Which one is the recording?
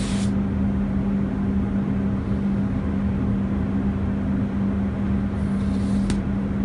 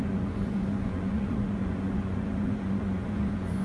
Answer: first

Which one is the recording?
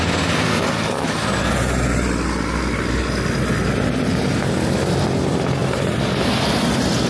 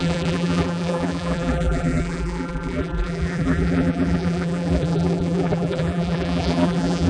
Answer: first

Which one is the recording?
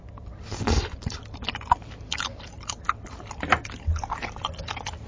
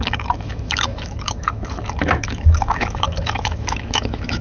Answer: first